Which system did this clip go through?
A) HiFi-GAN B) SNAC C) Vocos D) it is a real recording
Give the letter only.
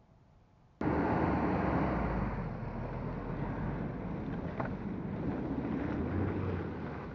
D